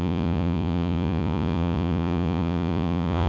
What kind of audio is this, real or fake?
fake